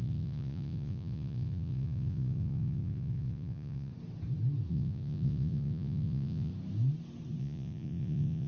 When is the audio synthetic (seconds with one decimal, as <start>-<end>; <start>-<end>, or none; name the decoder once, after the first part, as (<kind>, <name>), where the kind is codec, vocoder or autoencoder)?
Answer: 0.0-3.9 (vocoder, Vocos); 4.7-6.5; 7.4-8.5